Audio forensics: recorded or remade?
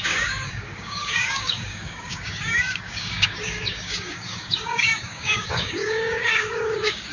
remade